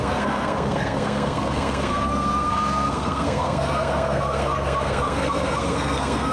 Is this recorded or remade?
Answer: remade